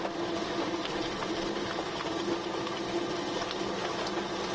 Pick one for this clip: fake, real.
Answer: real